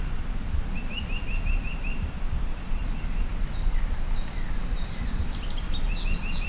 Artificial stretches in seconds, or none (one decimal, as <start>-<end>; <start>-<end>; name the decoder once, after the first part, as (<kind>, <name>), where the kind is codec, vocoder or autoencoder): 3.3-5.2 (vocoder, BigVGAN v2)